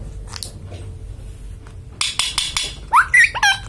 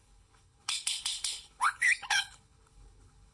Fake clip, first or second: second